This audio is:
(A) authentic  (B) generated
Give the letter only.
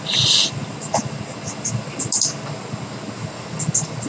A